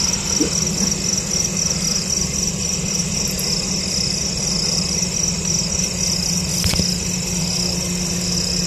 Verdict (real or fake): real